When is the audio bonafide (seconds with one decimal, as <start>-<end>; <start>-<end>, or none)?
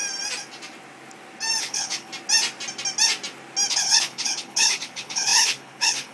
0.0-1.6; 2.1-3.7